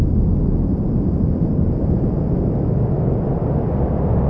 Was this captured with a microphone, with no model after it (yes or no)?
yes